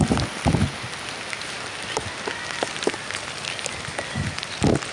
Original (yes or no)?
yes